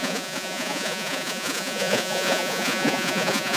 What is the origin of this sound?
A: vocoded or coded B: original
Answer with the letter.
A